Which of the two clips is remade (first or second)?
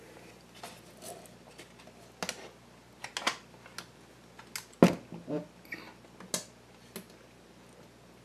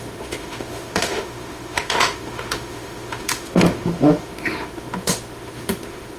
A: second